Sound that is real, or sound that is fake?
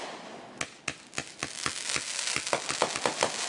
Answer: real